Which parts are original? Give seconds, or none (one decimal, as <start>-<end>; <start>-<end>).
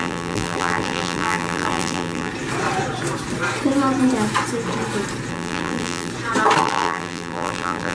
2.3-5.3; 6.1-6.6